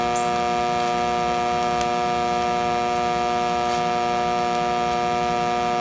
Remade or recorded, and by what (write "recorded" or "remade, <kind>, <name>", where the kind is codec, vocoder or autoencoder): recorded